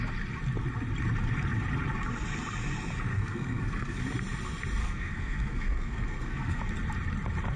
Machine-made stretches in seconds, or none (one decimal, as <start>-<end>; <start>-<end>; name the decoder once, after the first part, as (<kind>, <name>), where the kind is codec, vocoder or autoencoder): 3.1-4.0 (codec, SNAC); 4.8-6.6